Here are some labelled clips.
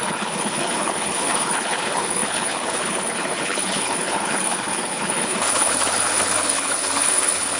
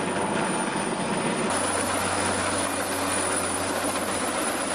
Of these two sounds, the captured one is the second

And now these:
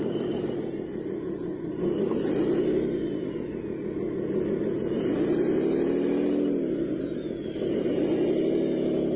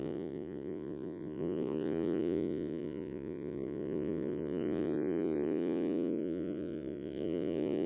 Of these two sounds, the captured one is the first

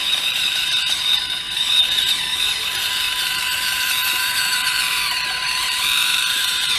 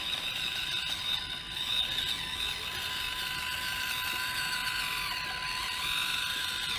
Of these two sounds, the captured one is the second